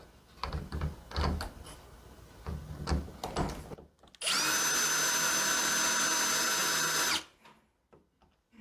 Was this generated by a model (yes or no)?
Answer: no